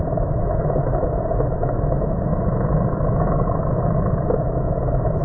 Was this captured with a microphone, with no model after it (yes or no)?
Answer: no